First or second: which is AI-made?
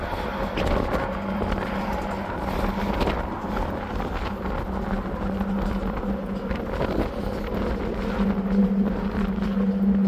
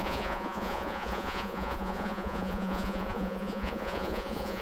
second